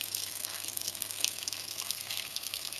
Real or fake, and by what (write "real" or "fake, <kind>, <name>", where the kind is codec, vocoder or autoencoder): fake, codec, SNAC